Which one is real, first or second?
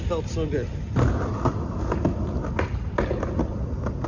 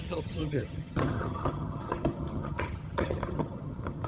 first